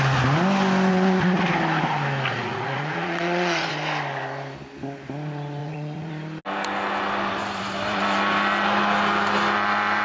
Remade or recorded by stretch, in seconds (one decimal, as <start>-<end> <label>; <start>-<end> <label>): 0.0-0.9 recorded; 0.9-1.4 remade; 1.4-2.3 recorded; 2.3-3.7 remade; 3.7-5.6 recorded; 5.6-6.1 remade; 6.1-10.0 recorded